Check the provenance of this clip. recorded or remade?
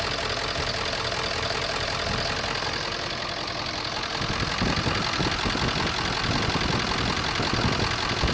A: recorded